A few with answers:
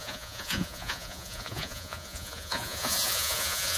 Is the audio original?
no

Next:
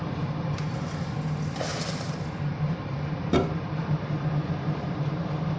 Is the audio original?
no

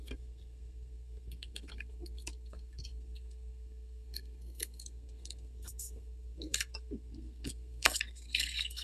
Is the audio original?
no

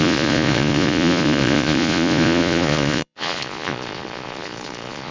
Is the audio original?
no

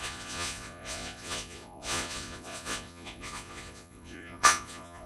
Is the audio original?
no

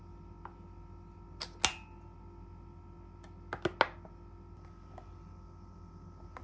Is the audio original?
yes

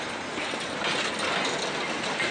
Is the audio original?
yes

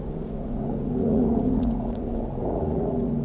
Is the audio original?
no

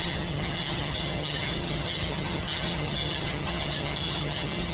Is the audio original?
no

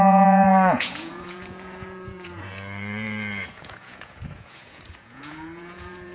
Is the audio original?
no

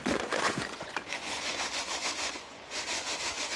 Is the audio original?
no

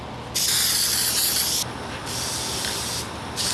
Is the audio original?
yes